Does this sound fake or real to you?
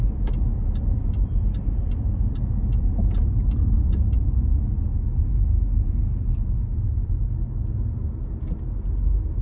real